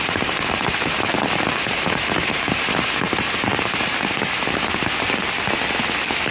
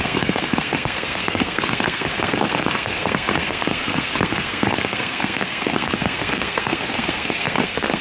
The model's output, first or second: second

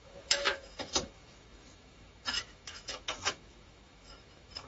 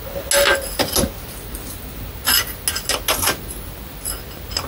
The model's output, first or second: first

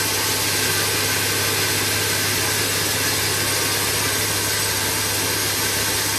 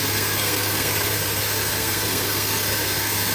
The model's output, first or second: second